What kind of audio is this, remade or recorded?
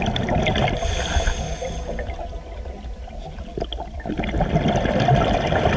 recorded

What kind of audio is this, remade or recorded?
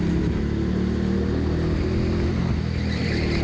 recorded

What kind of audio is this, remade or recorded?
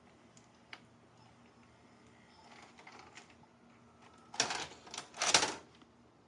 recorded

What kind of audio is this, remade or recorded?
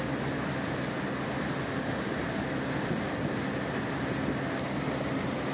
recorded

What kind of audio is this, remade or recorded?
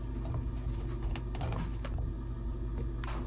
recorded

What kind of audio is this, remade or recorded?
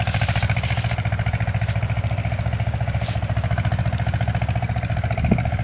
recorded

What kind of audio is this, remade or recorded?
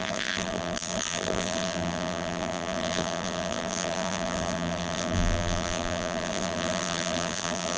remade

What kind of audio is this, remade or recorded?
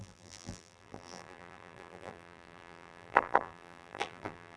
remade